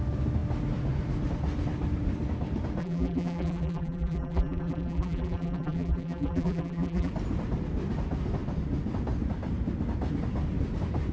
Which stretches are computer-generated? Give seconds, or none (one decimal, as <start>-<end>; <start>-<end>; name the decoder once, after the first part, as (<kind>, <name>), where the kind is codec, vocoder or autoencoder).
2.8-7.1 (vocoder, BigVGAN v2)